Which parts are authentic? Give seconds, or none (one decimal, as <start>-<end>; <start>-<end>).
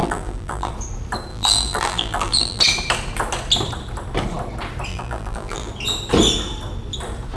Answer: 0.7-1.3; 2.6-4.9; 5.7-7.4